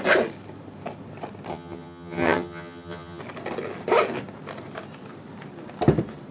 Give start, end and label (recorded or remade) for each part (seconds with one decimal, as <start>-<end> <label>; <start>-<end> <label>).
0.0-1.5 recorded; 1.5-3.2 remade; 3.2-6.3 recorded